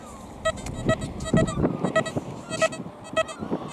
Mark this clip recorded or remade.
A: recorded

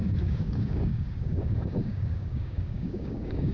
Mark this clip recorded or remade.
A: remade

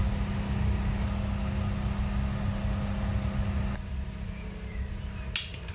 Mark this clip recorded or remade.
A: recorded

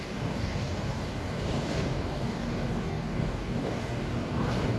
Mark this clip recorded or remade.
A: remade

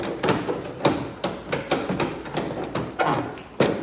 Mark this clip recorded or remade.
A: recorded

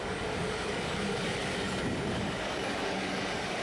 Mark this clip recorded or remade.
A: remade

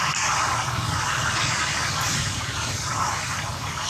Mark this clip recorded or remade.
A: remade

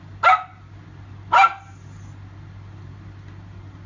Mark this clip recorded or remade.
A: recorded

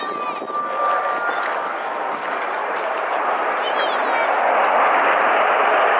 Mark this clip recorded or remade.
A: recorded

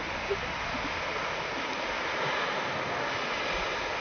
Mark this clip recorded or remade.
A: recorded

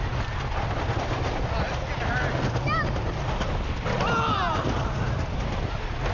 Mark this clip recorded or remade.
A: recorded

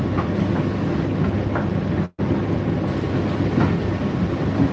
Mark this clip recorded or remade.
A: recorded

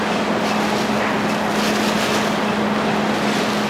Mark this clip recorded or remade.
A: recorded